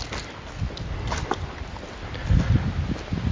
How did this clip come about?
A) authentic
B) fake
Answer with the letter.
A